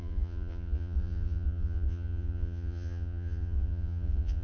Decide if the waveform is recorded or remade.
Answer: remade